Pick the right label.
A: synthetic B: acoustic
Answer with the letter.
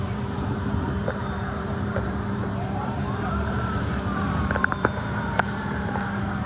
A